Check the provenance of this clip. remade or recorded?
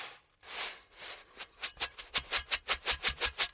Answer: recorded